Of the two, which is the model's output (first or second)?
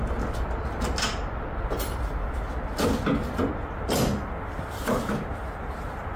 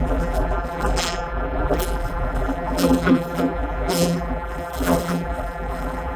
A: second